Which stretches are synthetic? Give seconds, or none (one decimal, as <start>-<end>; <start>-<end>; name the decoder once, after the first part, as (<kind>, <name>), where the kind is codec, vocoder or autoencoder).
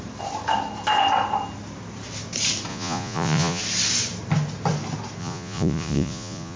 2.7-3.6 (vocoder, Vocos); 5.2-6.6